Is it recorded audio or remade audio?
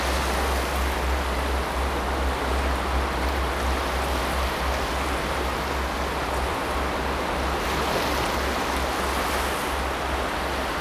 recorded